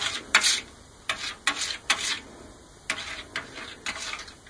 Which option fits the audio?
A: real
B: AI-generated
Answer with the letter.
A